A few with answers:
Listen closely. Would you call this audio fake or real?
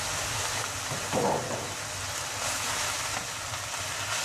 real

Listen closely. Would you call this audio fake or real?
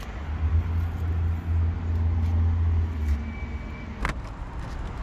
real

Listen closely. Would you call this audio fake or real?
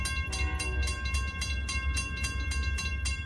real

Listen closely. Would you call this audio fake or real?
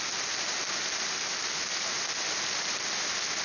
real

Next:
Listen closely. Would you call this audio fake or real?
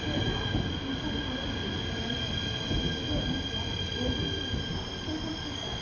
real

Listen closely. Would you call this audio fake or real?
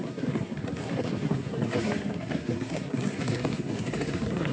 fake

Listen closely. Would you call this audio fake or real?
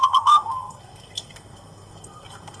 fake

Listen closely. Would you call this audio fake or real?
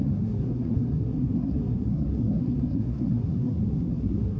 fake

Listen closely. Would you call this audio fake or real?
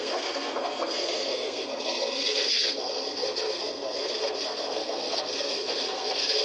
fake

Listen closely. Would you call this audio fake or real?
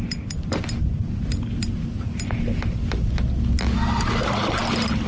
real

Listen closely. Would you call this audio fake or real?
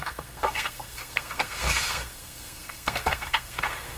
fake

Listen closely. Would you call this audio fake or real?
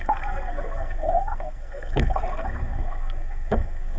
fake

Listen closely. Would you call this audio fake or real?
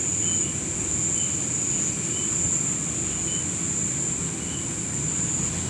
real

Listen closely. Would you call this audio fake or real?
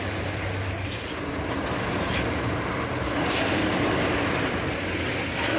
real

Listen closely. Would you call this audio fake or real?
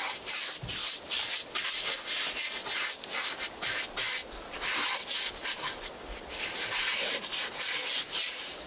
real